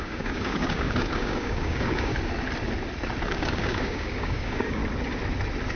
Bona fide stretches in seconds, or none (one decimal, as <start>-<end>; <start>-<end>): 2.1-3.3; 4.8-5.8